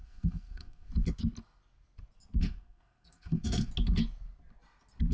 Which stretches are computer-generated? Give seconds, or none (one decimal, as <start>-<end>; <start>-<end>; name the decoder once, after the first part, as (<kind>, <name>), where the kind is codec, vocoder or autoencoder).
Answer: 0.0-0.9 (codec, SNAC); 2.4-3.7